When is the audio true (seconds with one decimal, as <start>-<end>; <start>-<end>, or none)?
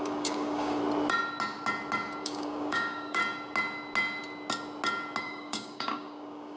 0.8-2.2; 3.2-5.2